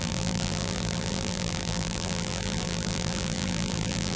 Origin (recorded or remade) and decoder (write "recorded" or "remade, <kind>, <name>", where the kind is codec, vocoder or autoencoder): remade, vocoder, BigVGAN v2